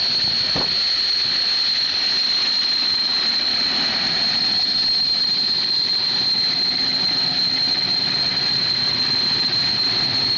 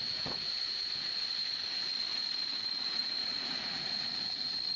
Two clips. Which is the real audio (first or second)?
first